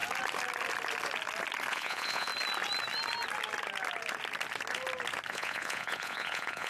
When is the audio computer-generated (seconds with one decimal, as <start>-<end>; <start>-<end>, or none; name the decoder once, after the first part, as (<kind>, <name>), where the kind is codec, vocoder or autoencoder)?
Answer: 1.7-2.3 (vocoder, Vocos); 5.3-6.7